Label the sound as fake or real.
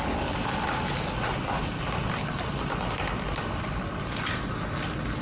real